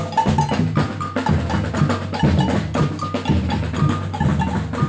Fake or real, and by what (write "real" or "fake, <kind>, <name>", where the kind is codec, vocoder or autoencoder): real